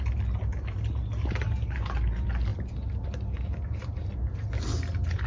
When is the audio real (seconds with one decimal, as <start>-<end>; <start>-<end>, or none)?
0.0-5.3